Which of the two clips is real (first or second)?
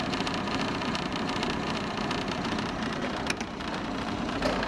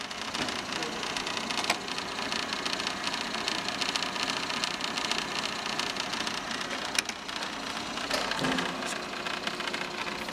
second